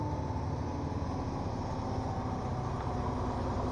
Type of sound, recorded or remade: recorded